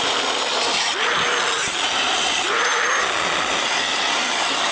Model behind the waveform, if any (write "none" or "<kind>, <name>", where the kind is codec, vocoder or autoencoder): none